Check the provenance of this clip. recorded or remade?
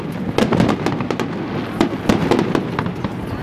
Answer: recorded